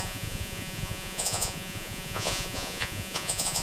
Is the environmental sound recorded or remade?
remade